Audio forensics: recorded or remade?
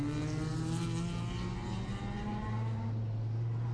recorded